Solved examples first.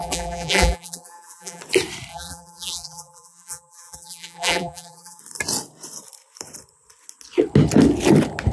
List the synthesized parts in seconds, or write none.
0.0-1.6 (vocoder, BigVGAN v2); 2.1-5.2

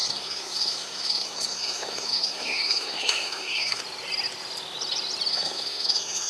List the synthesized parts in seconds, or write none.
0.0-3.8 (codec, SNAC); 5.3-6.3